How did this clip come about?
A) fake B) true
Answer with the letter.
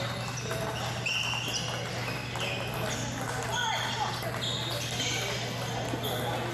B